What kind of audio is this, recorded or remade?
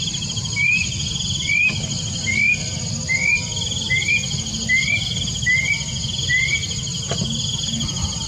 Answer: recorded